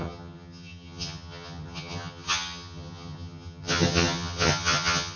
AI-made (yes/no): yes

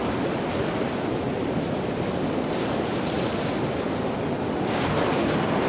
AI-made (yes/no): no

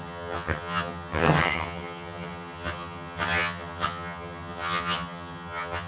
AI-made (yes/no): yes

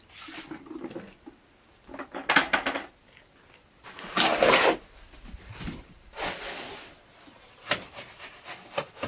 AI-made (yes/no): no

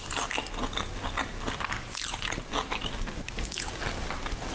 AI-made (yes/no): no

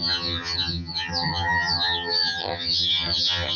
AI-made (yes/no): yes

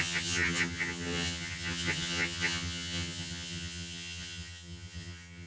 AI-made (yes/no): yes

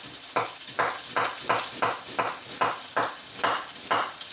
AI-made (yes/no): no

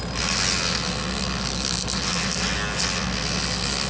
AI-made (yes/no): no